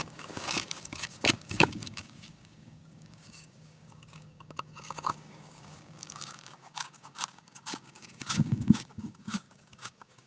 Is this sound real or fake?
fake